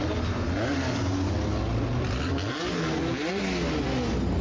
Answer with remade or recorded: recorded